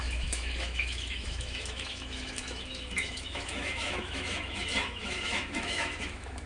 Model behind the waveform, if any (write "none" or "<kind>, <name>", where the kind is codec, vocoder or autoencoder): autoencoder, DAC-VAE